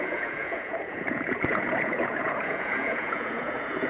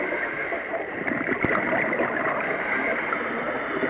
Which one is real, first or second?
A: second